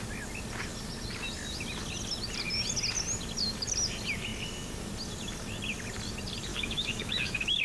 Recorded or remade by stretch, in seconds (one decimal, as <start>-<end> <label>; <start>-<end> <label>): 0.0-6.5 recorded; 6.5-7.6 remade